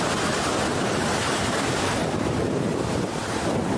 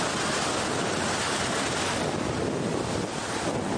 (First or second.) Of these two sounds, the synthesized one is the first